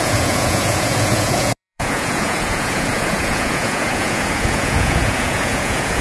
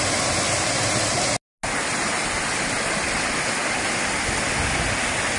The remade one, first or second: first